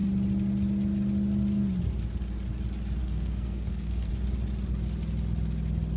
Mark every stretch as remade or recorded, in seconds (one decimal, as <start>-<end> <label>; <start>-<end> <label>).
0.0-3.0 recorded; 3.0-4.1 remade; 4.1-6.0 recorded